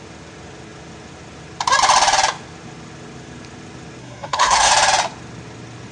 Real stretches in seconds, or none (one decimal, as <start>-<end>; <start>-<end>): 0.0-4.0; 4.7-5.9